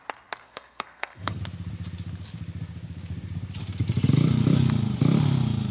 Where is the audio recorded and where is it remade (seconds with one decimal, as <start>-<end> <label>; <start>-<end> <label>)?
0.0-0.4 recorded; 0.4-1.4 remade; 1.4-5.7 recorded